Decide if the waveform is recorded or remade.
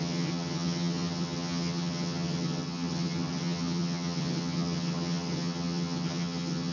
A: remade